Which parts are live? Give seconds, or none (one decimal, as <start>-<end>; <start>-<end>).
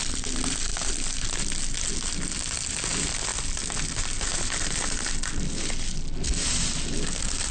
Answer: 0.0-7.5